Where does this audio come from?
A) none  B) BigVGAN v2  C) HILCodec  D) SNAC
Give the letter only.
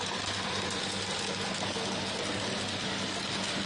A